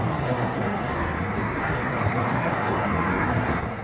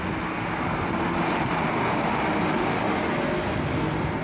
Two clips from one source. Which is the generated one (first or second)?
first